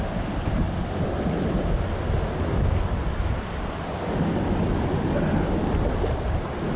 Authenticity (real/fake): real